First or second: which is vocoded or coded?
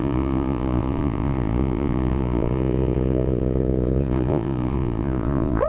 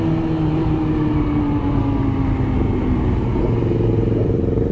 first